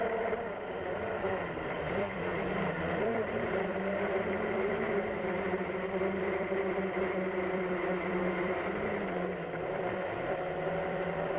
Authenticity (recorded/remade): remade